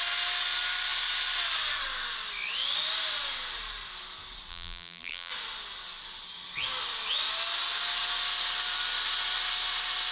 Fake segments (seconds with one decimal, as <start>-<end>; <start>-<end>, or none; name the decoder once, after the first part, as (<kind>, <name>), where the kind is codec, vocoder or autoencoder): 4.5-5.3 (vocoder, BigVGAN v2)

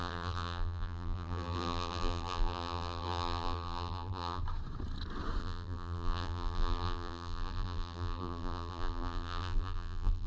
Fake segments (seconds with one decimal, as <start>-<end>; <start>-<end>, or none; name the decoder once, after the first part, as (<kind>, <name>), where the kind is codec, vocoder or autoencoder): 0.0-4.4 (vocoder, BigVGAN v2); 5.4-10.3

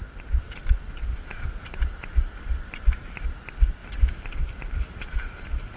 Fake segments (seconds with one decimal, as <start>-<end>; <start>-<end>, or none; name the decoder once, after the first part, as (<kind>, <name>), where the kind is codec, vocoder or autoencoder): 0.0-0.6 (vocoder, BigVGAN v2); 1.1-2.4; 3.8-5.8

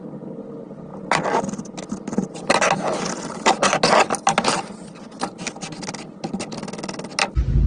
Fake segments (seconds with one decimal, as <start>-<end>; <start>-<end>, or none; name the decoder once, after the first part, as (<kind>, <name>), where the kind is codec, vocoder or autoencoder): none

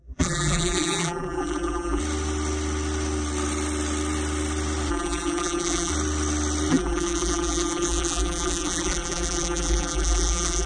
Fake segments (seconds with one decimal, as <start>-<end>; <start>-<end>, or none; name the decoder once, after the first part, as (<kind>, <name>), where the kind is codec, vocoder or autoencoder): 0.0-2.0 (vocoder, BigVGAN v2); 4.9-5.9; 6.7-10.7

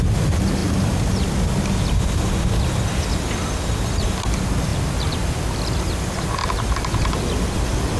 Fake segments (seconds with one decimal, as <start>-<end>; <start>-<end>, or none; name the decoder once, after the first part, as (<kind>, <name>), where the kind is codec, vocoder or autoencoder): none

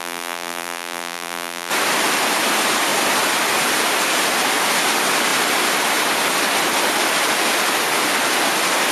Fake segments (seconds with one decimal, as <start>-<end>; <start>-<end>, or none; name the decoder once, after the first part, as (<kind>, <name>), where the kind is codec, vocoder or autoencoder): 0.0-1.7 (vocoder, BigVGAN v2)

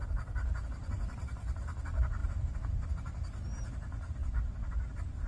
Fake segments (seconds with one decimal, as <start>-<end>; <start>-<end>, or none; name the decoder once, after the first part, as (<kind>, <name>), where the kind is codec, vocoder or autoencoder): 0.8-1.7 (vocoder, BigVGAN v2)